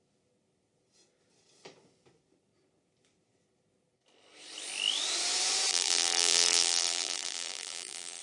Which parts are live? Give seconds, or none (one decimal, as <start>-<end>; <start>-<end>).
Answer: 0.0-5.7